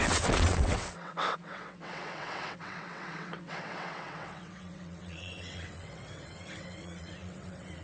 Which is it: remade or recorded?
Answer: remade